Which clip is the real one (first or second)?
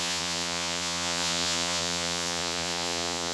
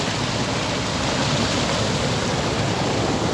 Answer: second